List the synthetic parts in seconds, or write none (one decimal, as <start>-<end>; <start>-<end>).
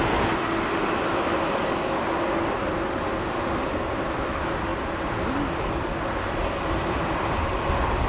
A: none